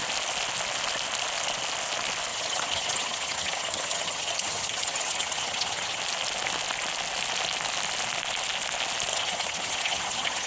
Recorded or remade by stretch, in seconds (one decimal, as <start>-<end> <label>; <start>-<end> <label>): 0.0-2.3 recorded; 2.3-6.0 remade; 6.0-9.1 recorded; 9.1-10.5 remade